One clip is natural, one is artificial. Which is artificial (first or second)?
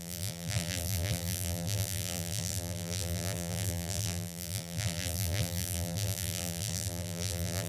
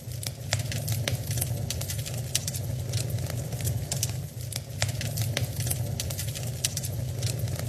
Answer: first